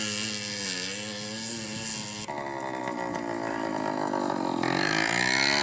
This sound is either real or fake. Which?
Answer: real